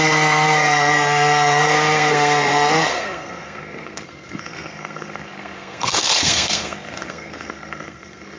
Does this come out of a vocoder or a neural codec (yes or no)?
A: yes